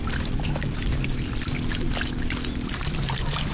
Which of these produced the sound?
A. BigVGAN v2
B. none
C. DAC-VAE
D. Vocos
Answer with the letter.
B